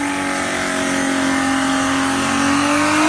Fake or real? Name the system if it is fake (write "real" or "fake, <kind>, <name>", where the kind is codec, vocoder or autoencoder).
fake, codec, DAC